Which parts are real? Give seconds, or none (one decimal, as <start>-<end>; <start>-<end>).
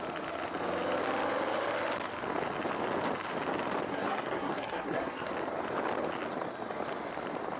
0.0-3.9; 5.3-7.6